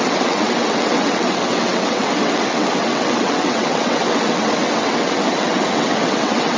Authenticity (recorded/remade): remade